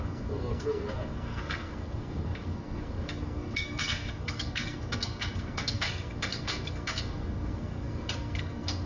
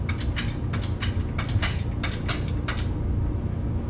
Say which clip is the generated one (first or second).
first